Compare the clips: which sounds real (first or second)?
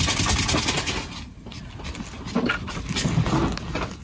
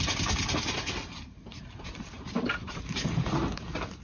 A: first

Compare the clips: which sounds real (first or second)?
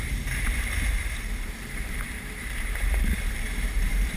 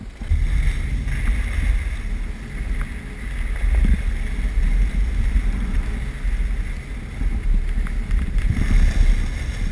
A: second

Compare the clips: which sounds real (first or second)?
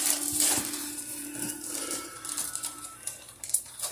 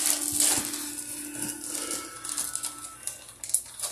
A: second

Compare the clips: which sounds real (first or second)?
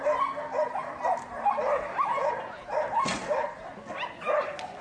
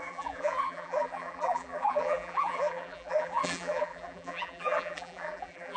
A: first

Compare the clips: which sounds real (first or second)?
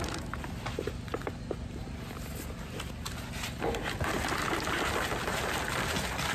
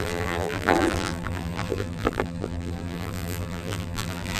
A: first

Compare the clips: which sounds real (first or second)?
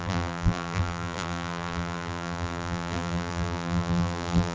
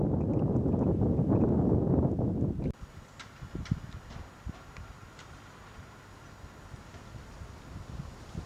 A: second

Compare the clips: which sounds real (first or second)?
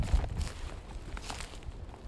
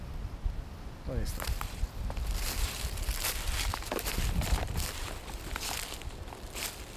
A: first